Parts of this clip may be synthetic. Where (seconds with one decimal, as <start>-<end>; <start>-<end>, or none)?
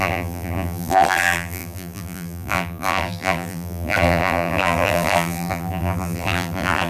0.0-6.9